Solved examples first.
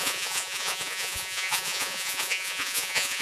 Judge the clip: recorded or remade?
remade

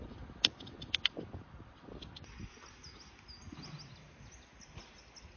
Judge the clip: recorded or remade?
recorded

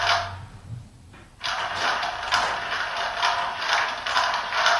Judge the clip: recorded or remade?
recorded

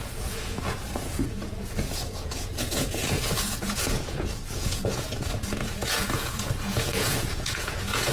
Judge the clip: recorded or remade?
remade